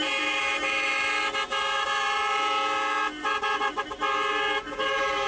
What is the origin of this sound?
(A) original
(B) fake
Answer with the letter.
B